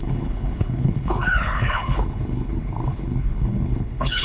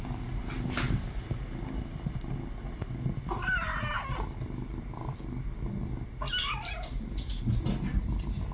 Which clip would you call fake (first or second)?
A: first